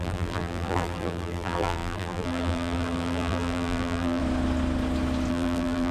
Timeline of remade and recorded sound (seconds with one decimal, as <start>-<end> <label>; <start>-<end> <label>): 0.0-4.2 remade; 4.2-5.3 recorded; 5.3-5.9 remade